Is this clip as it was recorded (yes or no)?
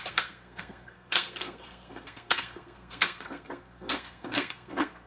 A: no